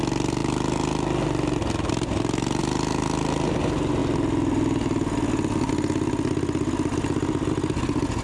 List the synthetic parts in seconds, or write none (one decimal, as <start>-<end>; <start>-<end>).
none